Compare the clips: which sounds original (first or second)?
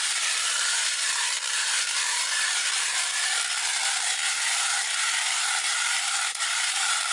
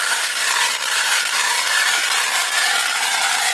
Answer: second